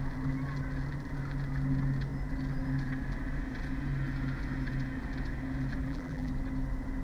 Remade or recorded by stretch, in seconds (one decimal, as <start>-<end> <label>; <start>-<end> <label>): 0.0-5.8 recorded; 5.8-6.3 remade; 6.3-7.0 recorded